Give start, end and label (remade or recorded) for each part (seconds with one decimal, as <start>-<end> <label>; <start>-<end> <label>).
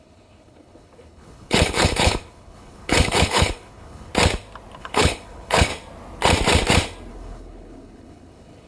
0.0-4.1 remade; 4.1-4.8 recorded; 4.8-5.7 remade; 5.7-7.1 recorded; 7.1-8.7 remade